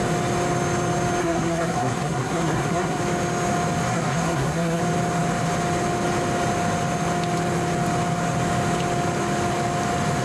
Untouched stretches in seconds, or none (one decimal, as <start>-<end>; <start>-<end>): 0.0-1.2; 3.0-3.9; 4.8-10.2